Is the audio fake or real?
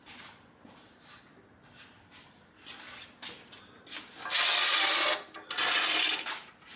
real